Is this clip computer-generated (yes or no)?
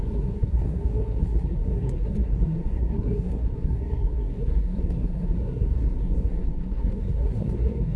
yes